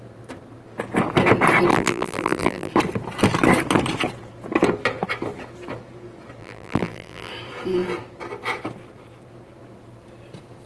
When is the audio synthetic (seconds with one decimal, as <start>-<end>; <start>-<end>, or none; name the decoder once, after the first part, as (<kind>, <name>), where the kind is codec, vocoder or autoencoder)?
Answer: 1.7-2.7 (vocoder, BigVGAN v2); 6.4-7.3